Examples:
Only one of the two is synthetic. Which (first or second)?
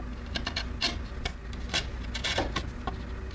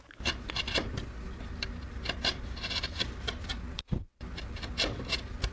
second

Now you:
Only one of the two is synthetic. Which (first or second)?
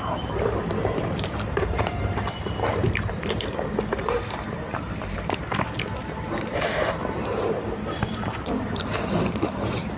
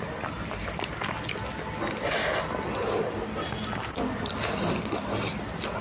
first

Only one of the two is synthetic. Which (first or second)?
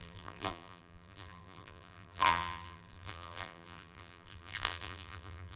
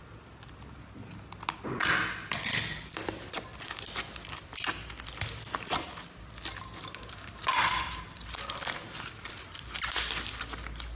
first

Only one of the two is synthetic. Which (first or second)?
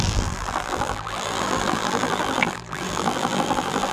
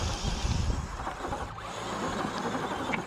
first